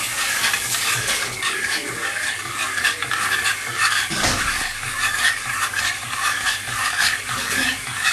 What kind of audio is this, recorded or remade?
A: remade